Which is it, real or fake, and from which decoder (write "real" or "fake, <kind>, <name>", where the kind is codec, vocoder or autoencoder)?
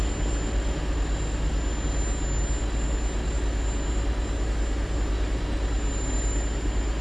real